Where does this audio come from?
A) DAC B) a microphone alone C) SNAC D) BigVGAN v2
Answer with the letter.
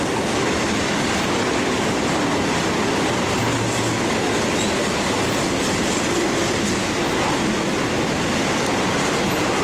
B